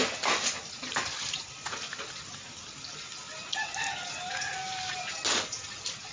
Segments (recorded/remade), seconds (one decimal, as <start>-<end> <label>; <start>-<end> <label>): 0.0-6.1 recorded